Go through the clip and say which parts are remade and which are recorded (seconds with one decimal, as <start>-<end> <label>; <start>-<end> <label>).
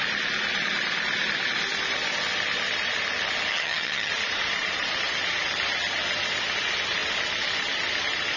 0.0-3.5 recorded; 3.5-4.1 remade; 4.1-8.4 recorded